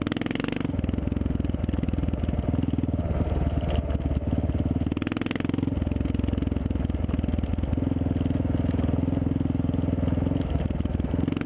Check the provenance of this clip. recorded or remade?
recorded